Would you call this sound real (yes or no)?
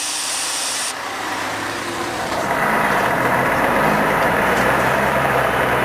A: no